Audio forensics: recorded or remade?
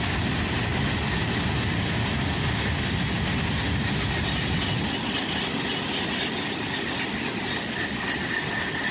recorded